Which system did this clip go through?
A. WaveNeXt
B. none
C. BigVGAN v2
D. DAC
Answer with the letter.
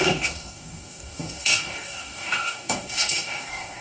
D